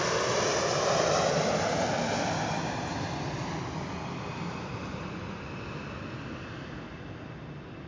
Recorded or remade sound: recorded